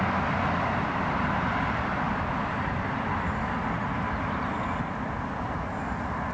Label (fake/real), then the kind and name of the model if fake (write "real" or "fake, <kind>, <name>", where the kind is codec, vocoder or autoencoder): real